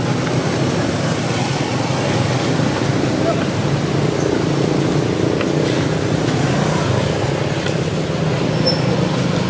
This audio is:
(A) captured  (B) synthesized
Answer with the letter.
A